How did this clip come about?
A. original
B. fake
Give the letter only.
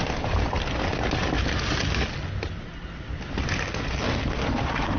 A